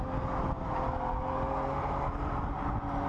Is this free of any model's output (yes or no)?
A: yes